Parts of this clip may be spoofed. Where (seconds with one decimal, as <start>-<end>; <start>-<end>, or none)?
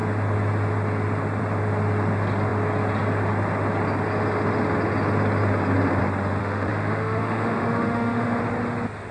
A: 6.4-8.4